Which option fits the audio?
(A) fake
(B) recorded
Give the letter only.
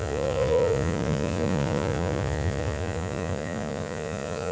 A